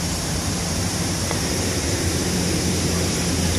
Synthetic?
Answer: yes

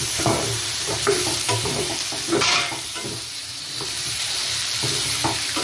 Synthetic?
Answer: yes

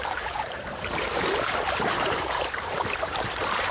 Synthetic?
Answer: yes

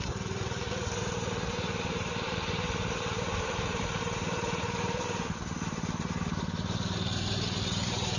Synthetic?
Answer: yes